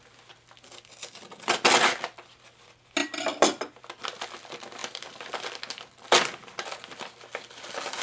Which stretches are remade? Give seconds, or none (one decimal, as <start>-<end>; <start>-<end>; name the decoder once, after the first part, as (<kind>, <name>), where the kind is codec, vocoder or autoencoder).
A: 3.0-3.8 (vocoder, BigVGAN v2); 4.8-5.5